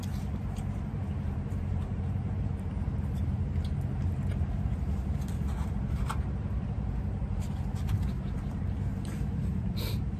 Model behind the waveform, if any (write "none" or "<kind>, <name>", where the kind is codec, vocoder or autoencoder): vocoder, BigVGAN v2